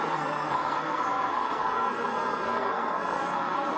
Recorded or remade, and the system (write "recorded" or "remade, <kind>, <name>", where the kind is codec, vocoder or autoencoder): remade, codec, SNAC